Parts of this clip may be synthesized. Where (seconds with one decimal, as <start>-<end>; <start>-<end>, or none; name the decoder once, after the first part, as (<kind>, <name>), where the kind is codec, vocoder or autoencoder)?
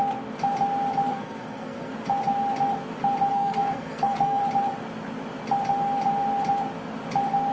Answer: 1.1-1.9 (codec, SNAC); 3.3-4.4